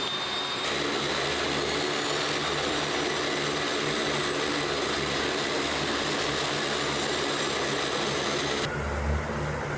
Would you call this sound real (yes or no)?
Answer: yes